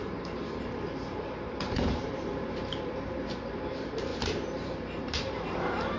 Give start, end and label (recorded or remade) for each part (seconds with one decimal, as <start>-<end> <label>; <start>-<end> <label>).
0.0-4.1 remade; 4.1-5.0 recorded; 5.0-6.0 remade